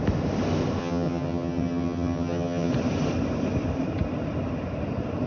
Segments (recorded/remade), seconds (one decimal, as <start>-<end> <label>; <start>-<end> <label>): 0.0-0.8 recorded; 0.8-2.7 remade; 2.7-5.3 recorded